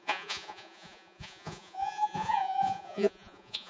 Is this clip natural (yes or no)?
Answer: no